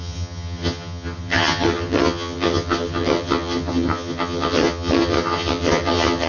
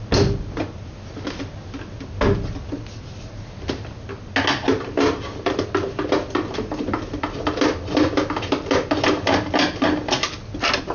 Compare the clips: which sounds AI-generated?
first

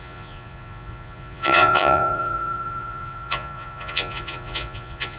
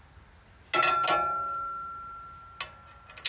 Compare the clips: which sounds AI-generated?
first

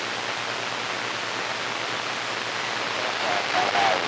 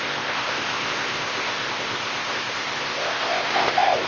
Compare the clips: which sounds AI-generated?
second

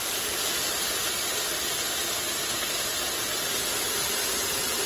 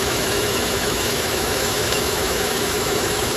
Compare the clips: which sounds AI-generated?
second